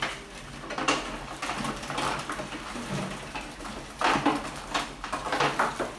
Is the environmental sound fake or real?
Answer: real